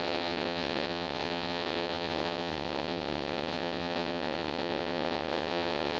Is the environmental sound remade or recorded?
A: remade